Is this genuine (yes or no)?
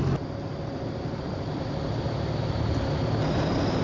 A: yes